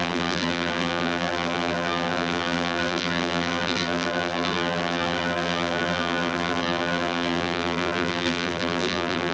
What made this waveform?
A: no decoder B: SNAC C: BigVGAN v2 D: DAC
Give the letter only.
C